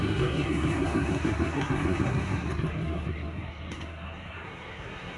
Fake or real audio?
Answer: fake